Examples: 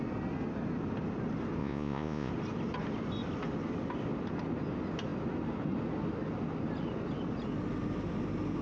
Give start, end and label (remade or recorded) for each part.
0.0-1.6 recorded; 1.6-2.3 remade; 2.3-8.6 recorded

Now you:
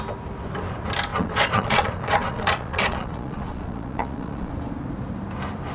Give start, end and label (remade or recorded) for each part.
0.0-1.1 recorded; 1.1-4.5 remade; 4.5-5.7 recorded